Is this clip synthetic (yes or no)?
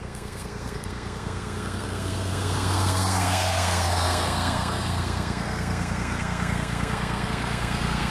yes